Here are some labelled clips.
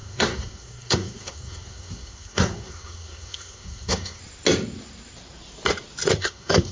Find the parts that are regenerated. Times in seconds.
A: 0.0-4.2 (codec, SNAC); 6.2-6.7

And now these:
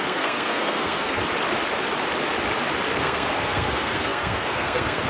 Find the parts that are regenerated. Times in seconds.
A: 0.0-1.2 (codec, SNAC); 3.0-5.1

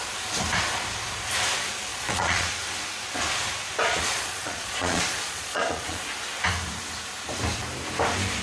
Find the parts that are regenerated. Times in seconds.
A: 1.9-2.5 (vocoder, Vocos); 3.9-6.0

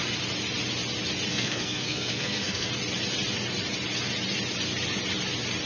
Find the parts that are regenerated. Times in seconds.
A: 1.3-2.7 (codec, SNAC)

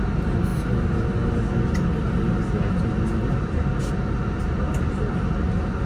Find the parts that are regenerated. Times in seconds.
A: none

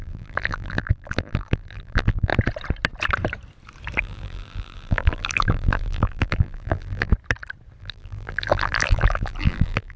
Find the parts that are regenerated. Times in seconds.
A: 0.0-2.3 (vocoder, BigVGAN v2); 4.0-7.1; 7.8-10.0

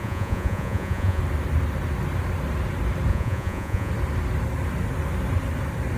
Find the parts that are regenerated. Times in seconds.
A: 0.0-1.2 (vocoder, Vocos); 3.1-3.9

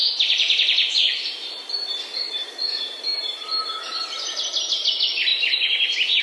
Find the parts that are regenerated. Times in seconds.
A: 0.0-3.7 (vocoder, BigVGAN v2)